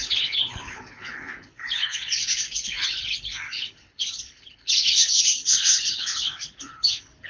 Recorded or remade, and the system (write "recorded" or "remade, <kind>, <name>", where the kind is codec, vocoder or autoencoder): remade, codec, HILCodec